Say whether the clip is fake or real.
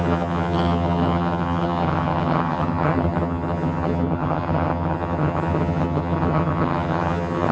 fake